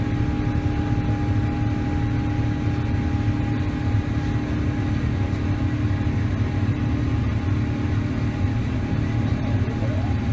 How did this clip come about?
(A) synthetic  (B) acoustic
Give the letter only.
B